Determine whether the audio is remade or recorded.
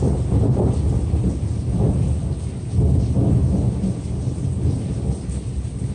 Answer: recorded